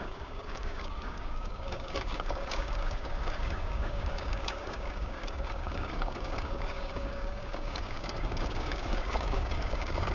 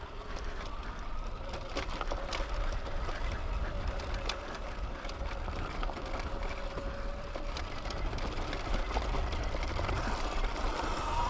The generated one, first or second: first